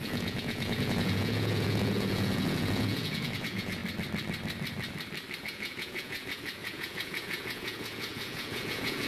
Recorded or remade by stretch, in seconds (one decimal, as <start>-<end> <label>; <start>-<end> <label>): 0.0-3.8 remade; 3.8-5.4 recorded; 5.4-9.1 remade